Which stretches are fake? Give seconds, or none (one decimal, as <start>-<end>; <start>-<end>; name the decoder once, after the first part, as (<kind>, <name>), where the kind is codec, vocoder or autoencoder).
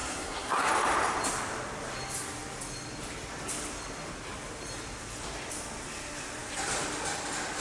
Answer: 0.0-0.7 (codec, SNAC)